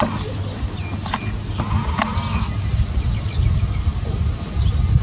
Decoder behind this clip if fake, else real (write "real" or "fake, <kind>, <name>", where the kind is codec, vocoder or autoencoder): real